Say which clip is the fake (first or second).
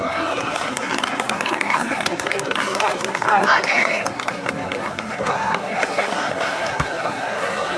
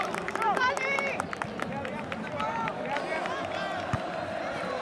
first